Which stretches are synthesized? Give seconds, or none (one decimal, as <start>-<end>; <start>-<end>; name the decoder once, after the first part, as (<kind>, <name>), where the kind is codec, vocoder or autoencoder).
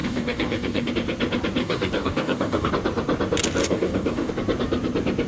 0.0-0.9 (codec, DAC); 1.6-2.7; 3.6-4.3